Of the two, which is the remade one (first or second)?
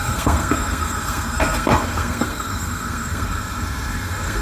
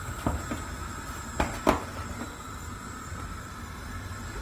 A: first